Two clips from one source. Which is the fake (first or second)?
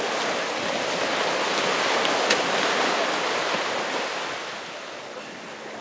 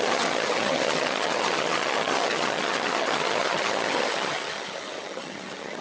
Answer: second